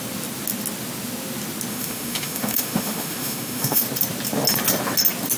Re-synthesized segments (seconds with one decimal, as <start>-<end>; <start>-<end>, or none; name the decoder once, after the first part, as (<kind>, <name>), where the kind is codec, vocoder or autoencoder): 1.7-3.8 (autoencoder, DAC-VAE)